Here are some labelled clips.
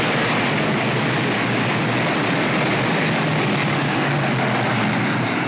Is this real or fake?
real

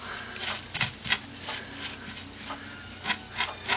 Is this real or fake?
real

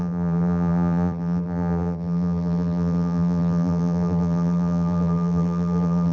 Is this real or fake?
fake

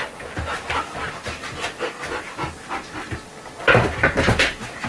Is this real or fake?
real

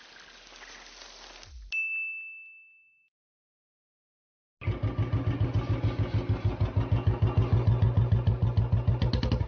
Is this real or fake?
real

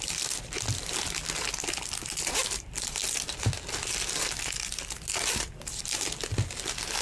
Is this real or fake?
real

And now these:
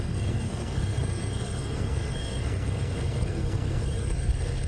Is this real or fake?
fake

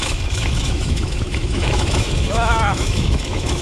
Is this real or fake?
fake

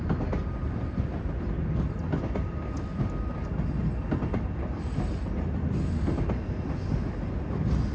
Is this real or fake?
real